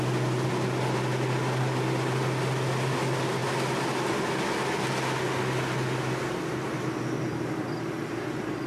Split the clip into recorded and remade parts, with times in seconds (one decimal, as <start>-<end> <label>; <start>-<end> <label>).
0.0-8.7 recorded